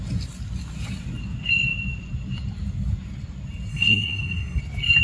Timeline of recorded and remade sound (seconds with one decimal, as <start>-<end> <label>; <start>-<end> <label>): 0.0-3.7 recorded; 3.7-4.6 remade; 4.6-5.0 recorded